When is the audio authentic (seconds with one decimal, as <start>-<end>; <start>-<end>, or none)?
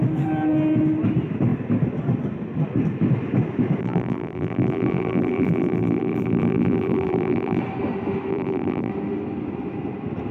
0.0-3.8; 7.6-8.3; 8.9-10.3